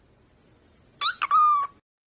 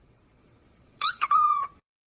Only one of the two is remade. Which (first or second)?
second